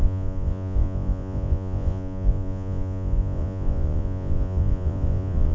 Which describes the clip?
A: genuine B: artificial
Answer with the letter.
B